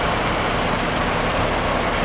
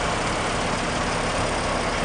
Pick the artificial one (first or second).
first